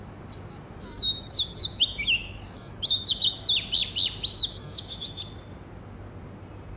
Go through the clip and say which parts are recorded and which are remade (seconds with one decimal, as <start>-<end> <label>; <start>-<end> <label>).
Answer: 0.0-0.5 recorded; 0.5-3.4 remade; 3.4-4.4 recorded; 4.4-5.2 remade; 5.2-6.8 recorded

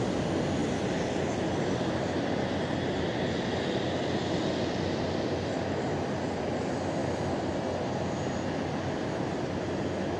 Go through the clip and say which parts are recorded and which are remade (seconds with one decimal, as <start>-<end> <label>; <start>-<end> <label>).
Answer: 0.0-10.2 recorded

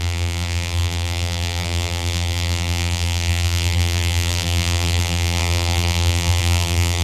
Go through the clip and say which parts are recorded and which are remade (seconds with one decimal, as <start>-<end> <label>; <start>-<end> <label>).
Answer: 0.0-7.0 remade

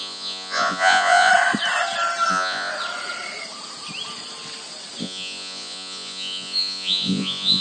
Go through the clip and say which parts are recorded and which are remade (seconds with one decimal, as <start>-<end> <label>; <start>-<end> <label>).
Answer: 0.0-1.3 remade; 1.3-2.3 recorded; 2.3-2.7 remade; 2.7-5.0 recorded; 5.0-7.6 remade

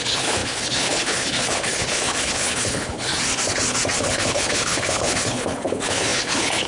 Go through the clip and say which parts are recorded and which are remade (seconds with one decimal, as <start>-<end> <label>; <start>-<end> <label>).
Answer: 0.0-3.1 remade; 3.1-4.0 recorded; 4.0-6.7 remade